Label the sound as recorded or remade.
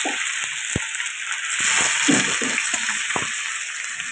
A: recorded